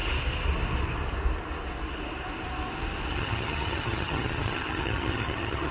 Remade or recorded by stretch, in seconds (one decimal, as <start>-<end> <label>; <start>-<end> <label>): 0.0-3.1 recorded; 3.1-5.7 remade